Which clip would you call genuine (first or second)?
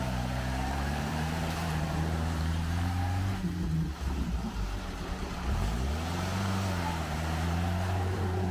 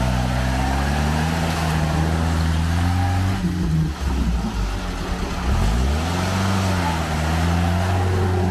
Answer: second